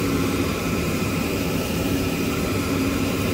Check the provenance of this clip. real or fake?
fake